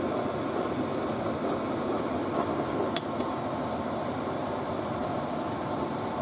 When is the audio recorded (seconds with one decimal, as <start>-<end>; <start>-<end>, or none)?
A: 0.9-3.9; 5.0-5.7